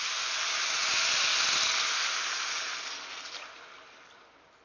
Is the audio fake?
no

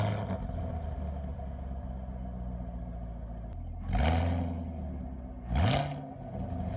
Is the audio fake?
no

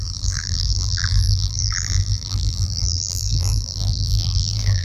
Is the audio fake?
yes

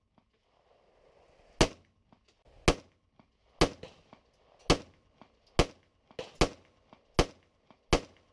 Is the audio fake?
no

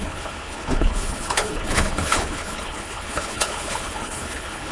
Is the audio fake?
yes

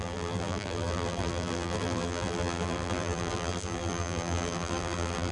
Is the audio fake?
yes